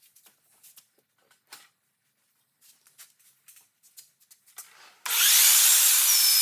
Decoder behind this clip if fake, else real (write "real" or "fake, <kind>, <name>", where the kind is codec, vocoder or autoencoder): real